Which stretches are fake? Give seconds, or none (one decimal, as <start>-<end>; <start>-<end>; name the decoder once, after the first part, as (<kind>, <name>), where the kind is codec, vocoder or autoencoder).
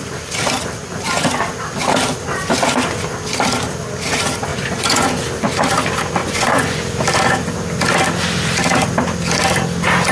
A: 4.5-5.1 (vocoder, Vocos); 6.2-6.8